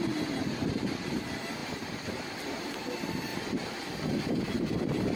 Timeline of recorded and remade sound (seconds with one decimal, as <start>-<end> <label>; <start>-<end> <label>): 0.0-3.3 remade; 3.3-4.3 recorded; 4.3-5.2 remade